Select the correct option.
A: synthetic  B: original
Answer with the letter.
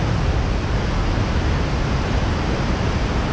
B